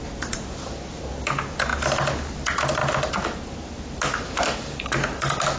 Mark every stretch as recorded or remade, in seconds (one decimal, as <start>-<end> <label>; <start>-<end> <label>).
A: 0.0-5.6 recorded